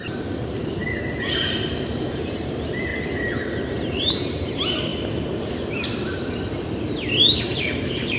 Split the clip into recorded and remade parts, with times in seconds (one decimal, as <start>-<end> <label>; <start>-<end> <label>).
0.0-0.8 remade; 0.8-1.9 recorded; 1.9-2.9 remade; 2.9-3.7 recorded; 3.7-4.9 remade; 4.9-7.4 recorded; 7.4-8.2 remade